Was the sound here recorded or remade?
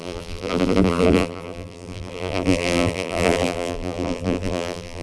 remade